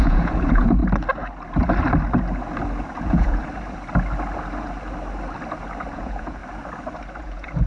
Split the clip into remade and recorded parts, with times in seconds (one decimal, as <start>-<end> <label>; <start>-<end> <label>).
0.0-0.8 remade; 0.8-3.0 recorded; 3.0-3.4 remade; 3.4-5.9 recorded; 5.9-6.4 remade; 6.4-7.2 recorded; 7.2-7.7 remade